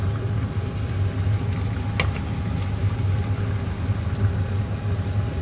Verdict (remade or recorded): recorded